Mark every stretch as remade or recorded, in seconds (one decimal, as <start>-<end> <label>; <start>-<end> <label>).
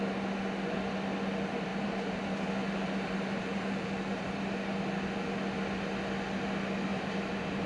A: 0.0-1.7 recorded; 1.7-2.2 remade; 2.2-2.6 recorded; 2.6-4.4 remade; 4.4-6.9 recorded; 6.9-7.7 remade